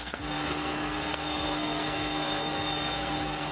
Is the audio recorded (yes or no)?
no